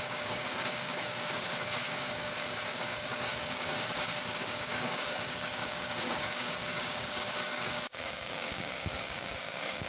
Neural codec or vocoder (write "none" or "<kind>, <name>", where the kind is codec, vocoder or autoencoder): codec, DAC